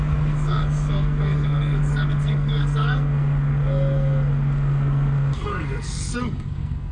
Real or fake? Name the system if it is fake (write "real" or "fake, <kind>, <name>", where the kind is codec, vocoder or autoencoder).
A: fake, codec, SNAC